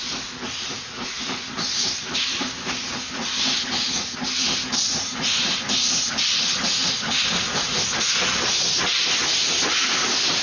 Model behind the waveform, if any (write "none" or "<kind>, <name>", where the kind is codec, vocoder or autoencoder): none